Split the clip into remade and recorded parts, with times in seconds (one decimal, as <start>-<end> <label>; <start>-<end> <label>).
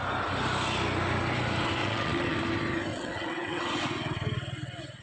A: 0.0-1.8 recorded; 1.8-2.4 remade; 2.4-2.9 recorded; 2.9-3.6 remade; 3.6-5.0 recorded